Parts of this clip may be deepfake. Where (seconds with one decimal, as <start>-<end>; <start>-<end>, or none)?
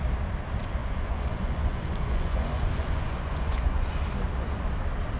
0.8-3.9